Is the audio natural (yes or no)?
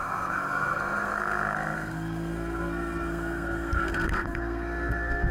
no